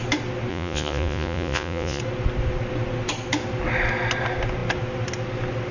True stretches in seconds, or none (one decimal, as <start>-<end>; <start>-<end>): 0.0-0.5; 2.0-5.7